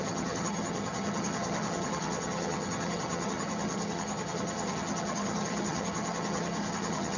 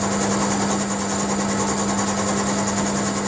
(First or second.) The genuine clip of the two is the second